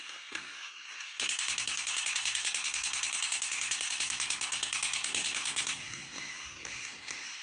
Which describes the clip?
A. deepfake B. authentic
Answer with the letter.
A